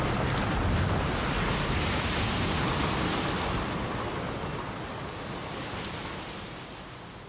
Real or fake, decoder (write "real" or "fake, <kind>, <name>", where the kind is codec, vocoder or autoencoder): real